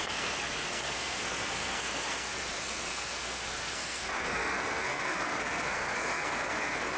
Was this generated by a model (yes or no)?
yes